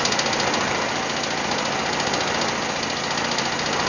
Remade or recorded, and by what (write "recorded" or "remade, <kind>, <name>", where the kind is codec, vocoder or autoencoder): recorded